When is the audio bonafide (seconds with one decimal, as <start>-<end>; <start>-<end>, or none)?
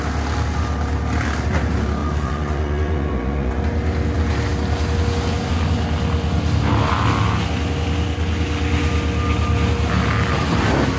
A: 0.0-2.0; 3.6-11.0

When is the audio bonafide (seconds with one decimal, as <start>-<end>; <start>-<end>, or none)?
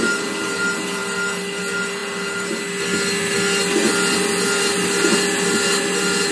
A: 0.0-6.3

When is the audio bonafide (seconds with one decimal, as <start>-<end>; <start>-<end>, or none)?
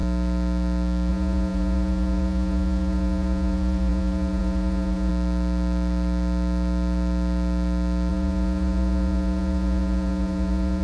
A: 0.0-1.1; 5.1-8.1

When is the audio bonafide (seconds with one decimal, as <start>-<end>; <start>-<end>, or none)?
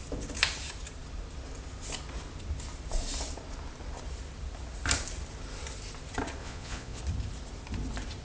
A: 0.0-6.4; 7.0-8.2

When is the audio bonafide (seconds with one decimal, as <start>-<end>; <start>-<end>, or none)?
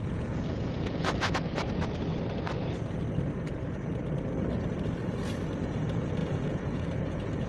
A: 1.6-5.6